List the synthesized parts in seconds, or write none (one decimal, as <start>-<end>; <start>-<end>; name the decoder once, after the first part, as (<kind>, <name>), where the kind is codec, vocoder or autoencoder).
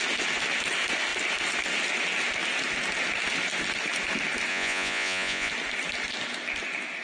4.5-5.5 (vocoder, Vocos)